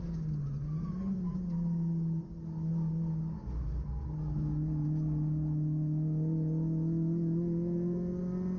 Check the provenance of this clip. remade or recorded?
recorded